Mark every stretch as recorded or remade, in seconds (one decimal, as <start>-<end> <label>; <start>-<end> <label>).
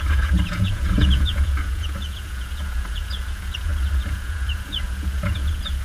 0.0-5.8 remade